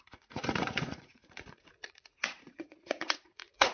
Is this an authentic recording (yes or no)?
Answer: no